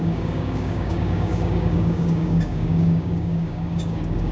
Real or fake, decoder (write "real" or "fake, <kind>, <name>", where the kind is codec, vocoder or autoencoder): fake, codec, DAC